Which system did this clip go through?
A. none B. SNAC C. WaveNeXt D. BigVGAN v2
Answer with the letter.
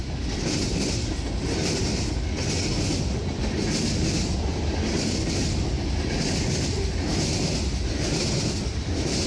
A